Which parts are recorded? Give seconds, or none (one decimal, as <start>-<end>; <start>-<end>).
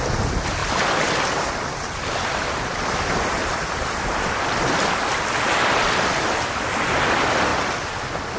0.0-8.4